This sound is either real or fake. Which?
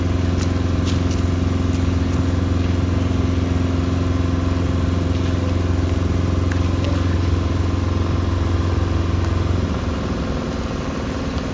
real